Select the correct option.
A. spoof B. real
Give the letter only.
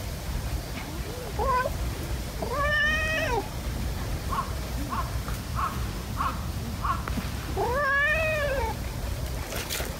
B